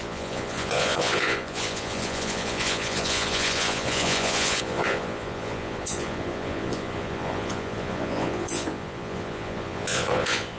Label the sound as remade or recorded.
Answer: remade